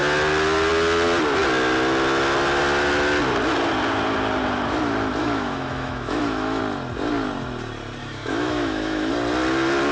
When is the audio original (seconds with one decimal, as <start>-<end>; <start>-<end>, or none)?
0.0-5.2; 6.6-8.0; 9.1-9.9